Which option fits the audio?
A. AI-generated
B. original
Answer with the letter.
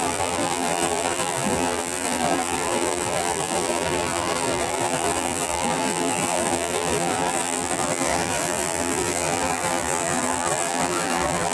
A